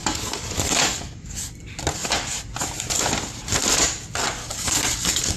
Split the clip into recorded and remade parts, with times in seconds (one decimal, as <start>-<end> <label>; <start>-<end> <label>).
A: 0.0-1.5 remade; 1.5-4.4 recorded; 4.4-5.4 remade